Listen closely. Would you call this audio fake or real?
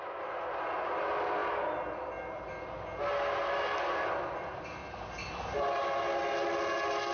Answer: real